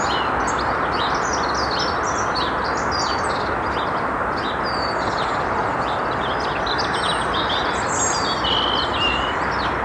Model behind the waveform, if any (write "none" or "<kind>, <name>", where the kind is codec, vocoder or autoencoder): none